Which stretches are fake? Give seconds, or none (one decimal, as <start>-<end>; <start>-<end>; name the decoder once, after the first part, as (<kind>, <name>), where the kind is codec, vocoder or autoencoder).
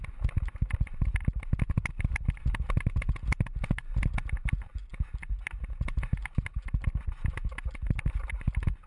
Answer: none